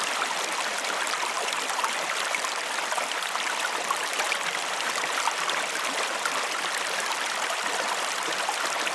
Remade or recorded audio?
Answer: remade